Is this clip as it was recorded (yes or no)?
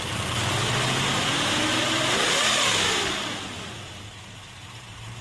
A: yes